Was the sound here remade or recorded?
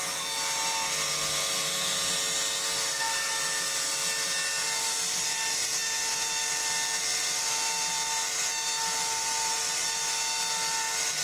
recorded